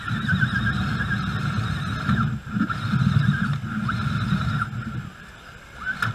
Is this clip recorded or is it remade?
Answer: recorded